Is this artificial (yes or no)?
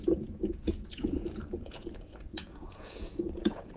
yes